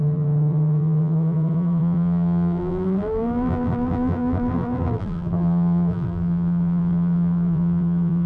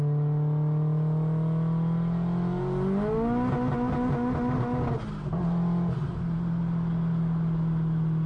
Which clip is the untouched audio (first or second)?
second